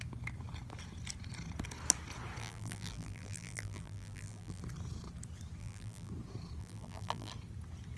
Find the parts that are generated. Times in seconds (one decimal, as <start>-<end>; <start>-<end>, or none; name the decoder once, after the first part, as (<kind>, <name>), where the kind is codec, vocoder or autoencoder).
2.4-4.6 (vocoder, BigVGAN v2); 5.6-6.1; 6.6-7.3